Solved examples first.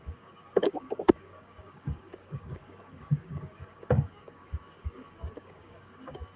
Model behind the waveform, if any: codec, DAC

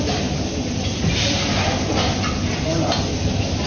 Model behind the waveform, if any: none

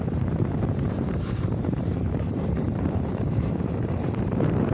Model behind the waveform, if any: vocoder, BigVGAN v2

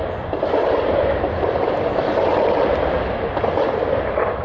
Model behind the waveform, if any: none